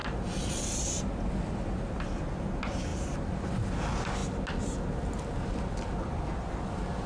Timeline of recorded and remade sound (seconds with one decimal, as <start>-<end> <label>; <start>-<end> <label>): 0.0-7.1 recorded